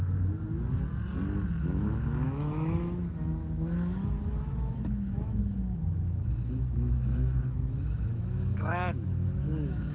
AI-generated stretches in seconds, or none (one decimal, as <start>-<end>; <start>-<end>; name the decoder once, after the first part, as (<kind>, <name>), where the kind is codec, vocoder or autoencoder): 1.6-9.9 (autoencoder, DAC-VAE)